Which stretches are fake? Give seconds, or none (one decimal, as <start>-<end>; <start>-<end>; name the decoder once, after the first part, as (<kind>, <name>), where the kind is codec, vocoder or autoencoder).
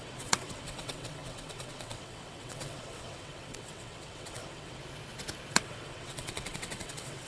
0.0-4.8 (vocoder, WaveNeXt); 5.5-7.3